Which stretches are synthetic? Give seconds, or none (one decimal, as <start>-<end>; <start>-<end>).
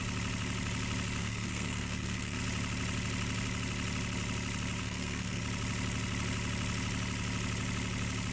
1.2-2.4; 4.8-5.4